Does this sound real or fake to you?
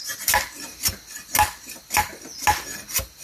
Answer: real